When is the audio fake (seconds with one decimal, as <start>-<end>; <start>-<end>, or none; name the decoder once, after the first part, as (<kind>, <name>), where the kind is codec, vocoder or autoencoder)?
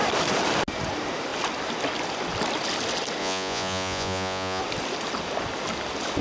3.2-4.6 (vocoder, Vocos)